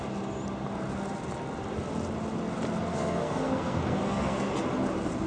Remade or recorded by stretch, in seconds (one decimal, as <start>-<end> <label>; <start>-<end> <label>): 0.0-2.9 recorded; 2.9-4.5 remade; 4.5-5.3 recorded